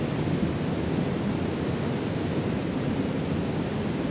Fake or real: real